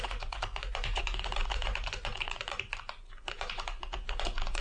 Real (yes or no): no